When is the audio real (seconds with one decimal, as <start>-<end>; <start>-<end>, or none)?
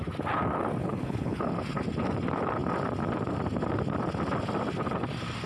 0.0-0.8; 1.4-5.5